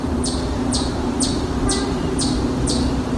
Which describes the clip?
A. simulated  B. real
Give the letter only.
A